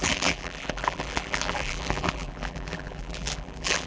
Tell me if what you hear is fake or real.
fake